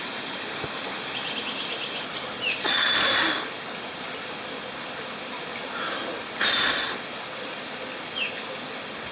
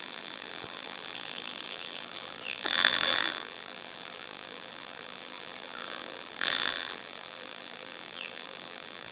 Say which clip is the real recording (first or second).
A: first